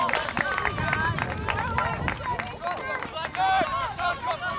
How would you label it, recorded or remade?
recorded